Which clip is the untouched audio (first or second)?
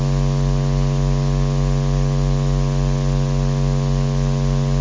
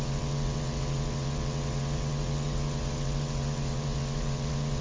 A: first